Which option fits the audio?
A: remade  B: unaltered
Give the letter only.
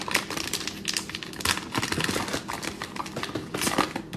B